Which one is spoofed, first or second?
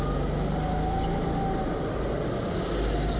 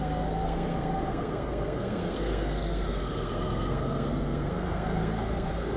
second